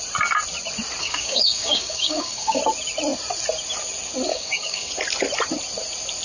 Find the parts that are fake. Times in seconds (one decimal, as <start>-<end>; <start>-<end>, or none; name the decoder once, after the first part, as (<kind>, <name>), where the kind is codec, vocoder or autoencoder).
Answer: 1.0-2.6 (codec, DAC); 4.3-4.9